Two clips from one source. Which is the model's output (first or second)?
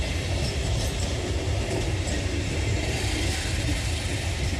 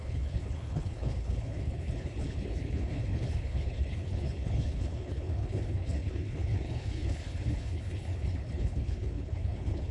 second